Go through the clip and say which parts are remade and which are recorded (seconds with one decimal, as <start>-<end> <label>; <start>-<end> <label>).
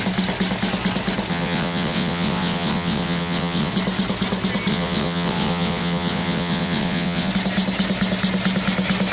0.0-1.3 recorded; 1.3-3.7 remade; 3.7-4.7 recorded; 4.7-7.3 remade; 7.3-9.1 recorded